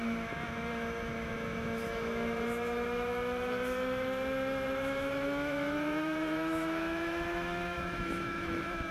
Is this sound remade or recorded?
remade